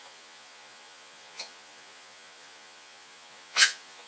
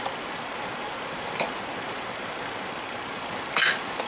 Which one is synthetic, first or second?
first